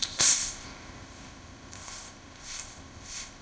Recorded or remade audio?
remade